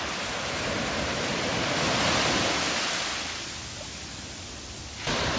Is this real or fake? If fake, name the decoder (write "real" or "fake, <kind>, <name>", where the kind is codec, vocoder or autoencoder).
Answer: real